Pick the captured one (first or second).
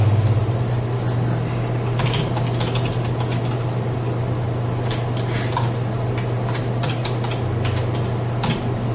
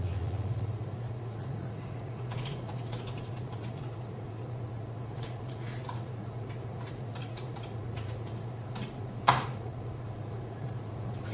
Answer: first